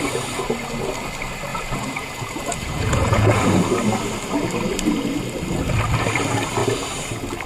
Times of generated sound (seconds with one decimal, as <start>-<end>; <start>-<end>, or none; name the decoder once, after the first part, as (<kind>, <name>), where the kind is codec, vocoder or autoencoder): 1.5-3.5 (vocoder, Vocos)